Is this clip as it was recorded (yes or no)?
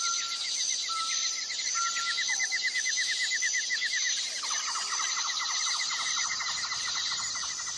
yes